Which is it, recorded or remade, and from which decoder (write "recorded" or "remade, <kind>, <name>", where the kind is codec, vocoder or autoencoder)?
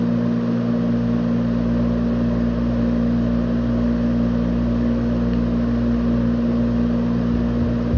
recorded